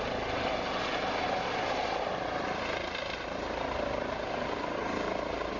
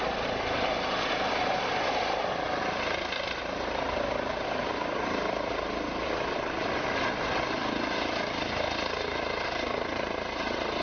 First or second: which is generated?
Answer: second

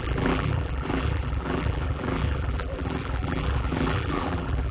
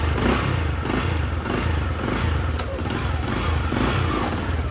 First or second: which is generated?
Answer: first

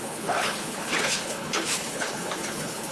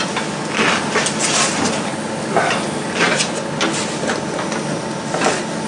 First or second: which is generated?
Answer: first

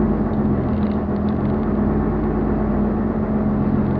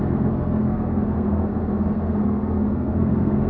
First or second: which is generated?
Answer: second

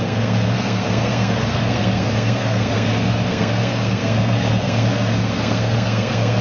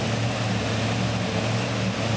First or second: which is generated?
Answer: first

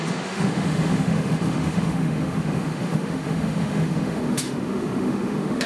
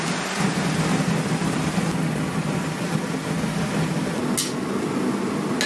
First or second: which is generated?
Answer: first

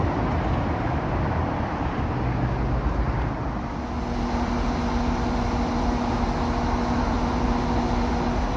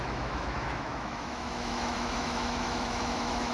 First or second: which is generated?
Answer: second